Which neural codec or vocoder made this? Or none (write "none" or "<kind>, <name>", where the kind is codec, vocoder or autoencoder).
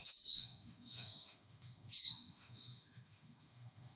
autoencoder, DAC-VAE